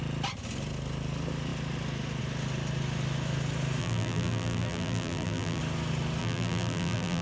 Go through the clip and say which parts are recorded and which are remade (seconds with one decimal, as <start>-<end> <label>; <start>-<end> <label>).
0.0-3.8 recorded; 3.8-5.6 remade; 5.6-6.2 recorded; 6.2-7.2 remade